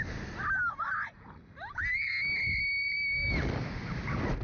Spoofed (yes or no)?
no